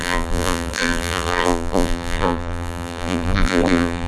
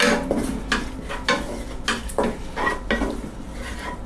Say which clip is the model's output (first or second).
first